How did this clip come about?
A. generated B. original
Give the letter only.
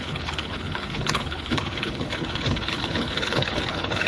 A